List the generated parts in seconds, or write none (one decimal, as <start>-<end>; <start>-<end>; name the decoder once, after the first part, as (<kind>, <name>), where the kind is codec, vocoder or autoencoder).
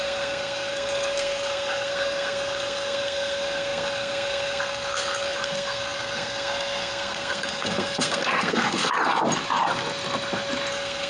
0.0-9.0 (codec, SNAC); 10.7-11.1